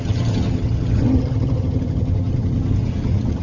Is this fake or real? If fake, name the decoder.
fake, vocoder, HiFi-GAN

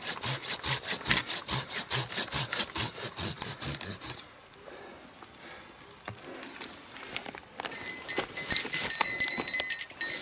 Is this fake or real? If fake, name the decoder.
real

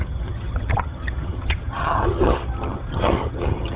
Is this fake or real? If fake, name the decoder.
fake, vocoder, HiFi-GAN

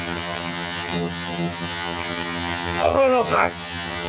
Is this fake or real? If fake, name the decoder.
fake, vocoder, HiFi-GAN